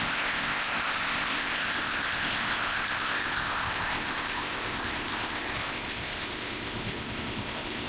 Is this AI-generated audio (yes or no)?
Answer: yes